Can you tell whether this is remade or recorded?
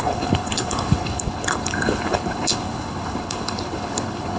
remade